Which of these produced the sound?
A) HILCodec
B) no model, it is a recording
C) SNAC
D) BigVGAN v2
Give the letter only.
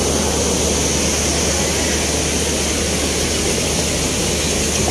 B